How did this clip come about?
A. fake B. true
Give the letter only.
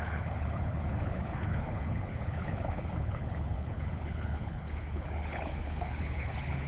A